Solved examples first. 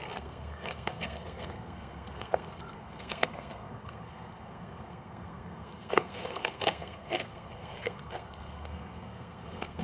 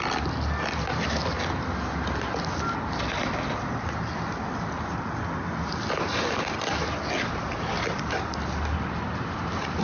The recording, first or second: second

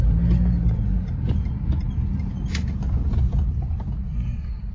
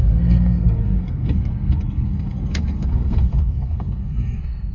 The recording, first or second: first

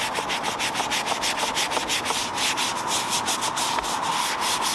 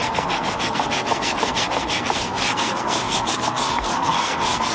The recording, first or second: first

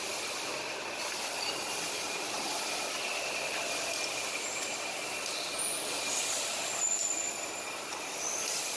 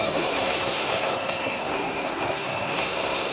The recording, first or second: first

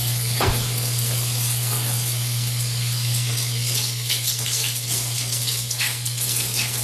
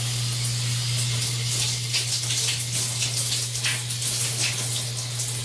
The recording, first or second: second